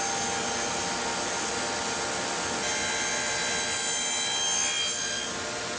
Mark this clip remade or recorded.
recorded